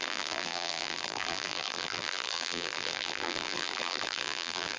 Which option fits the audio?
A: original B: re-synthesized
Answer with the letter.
B